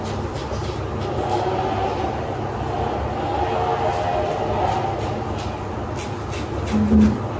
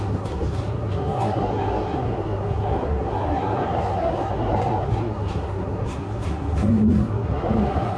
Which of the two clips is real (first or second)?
first